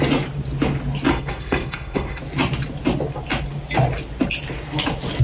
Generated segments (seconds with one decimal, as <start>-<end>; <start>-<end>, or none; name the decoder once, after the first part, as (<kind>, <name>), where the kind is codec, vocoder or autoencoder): 1.1-2.2 (codec, SNAC)